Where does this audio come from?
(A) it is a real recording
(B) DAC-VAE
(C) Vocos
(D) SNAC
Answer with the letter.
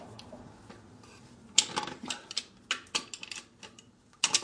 A